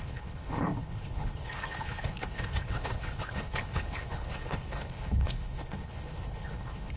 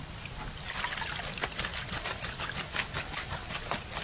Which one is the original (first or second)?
second